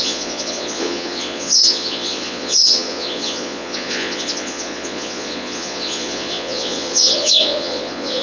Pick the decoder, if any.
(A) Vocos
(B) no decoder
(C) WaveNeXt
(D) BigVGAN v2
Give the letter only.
A